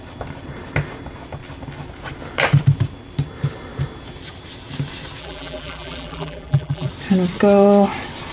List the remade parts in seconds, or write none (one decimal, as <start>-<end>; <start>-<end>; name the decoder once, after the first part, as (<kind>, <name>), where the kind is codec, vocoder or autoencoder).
5.2-6.9 (vocoder, BigVGAN v2)